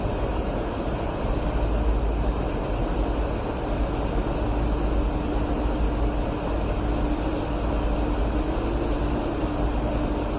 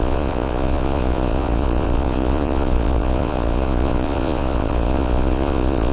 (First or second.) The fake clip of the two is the second